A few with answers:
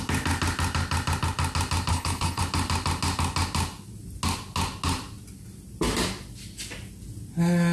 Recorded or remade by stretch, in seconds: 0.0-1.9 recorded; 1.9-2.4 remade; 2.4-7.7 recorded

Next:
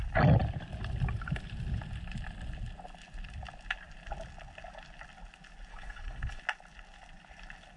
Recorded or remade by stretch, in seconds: 0.0-5.7 recorded; 5.7-6.4 remade; 6.4-7.8 recorded